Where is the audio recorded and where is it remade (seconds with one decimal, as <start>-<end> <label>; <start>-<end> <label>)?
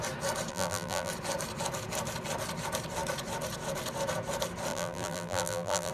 0.0-0.5 recorded; 0.5-1.1 remade; 1.1-4.7 recorded; 4.7-5.9 remade